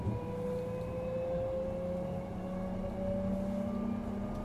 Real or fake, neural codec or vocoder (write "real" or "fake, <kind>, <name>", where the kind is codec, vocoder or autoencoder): real